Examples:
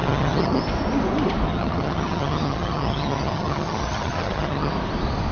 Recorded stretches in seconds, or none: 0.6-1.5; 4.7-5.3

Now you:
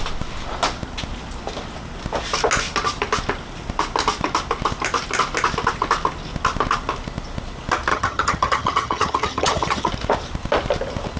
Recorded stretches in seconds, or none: 0.0-7.9; 9.9-11.2

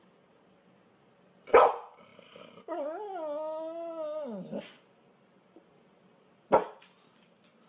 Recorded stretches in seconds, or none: 0.0-7.7